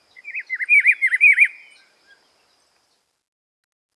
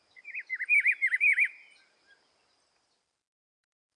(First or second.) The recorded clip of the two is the first